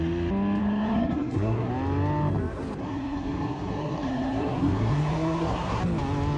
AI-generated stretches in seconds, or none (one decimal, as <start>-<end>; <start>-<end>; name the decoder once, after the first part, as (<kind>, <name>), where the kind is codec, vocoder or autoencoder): 0.6-1.7 (codec, SNAC); 2.8-5.8